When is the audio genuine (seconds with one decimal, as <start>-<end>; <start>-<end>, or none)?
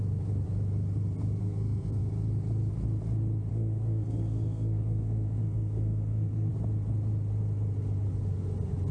0.0-1.4; 2.0-3.5; 6.5-8.9